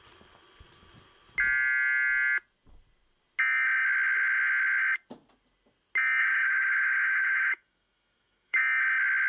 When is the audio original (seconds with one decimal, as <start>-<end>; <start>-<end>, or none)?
0.0-6.2; 8.6-9.3